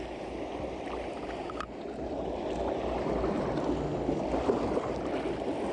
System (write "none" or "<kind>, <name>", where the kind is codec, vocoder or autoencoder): none